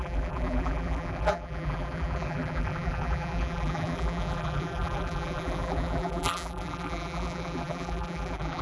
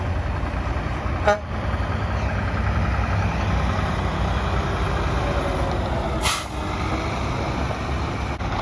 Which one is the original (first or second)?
second